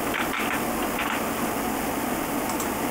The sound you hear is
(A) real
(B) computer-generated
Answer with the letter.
A